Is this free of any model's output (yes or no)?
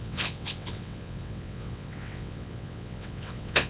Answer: no